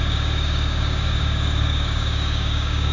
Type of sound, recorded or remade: remade